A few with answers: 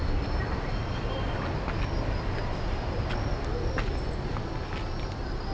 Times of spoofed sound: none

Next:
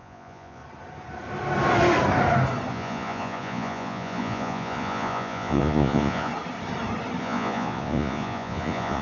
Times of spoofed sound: 0.0-0.6 (vocoder, Vocos); 2.7-6.3; 7.2-9.0

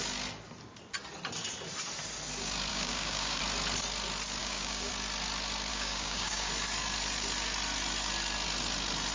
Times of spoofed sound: 2.7-3.4 (codec, DAC); 4.4-4.9; 5.7-6.5

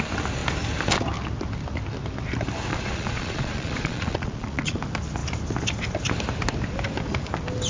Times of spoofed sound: 2.7-4.8 (vocoder, Vocos)

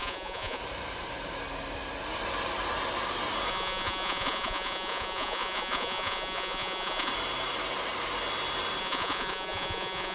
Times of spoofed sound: 0.0-0.6 (vocoder, Vocos); 3.5-7.1; 8.8-10.1